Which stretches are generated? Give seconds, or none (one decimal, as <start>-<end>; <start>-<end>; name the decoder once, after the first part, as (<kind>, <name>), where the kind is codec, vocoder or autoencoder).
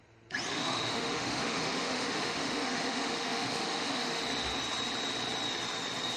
0.5-4.2 (autoencoder, DAC-VAE)